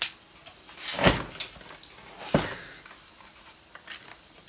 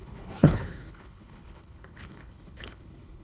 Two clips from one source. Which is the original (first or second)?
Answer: first